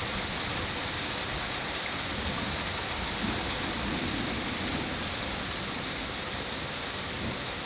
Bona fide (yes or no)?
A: yes